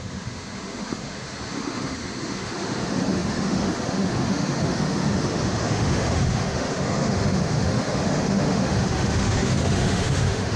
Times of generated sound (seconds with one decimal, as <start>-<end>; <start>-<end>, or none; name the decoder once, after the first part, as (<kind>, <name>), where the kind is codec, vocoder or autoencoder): 0.0-10.6 (autoencoder, DAC-VAE)